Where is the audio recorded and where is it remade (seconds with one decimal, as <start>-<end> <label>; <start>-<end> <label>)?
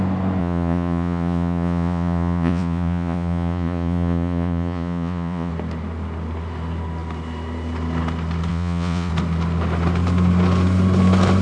0.0-0.4 recorded; 0.4-5.5 remade; 5.5-8.5 recorded; 8.5-9.1 remade; 9.1-11.4 recorded